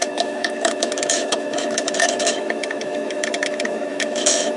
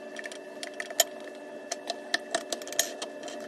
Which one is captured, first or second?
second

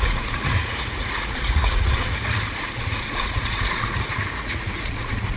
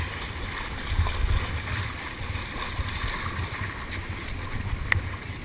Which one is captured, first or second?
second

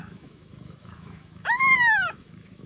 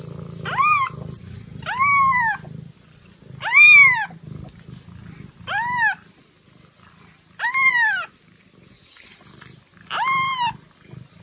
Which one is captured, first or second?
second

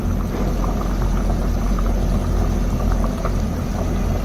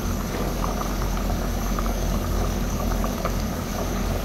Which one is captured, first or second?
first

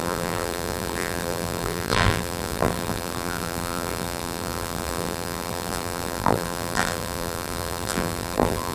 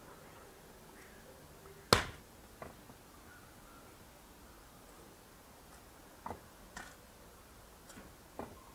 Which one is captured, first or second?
second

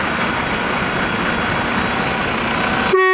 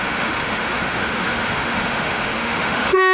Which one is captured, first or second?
first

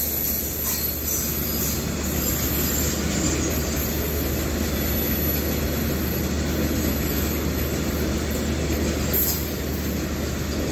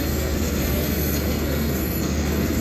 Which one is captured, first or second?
first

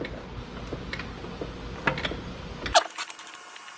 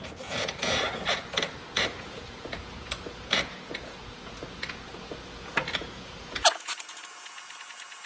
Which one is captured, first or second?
first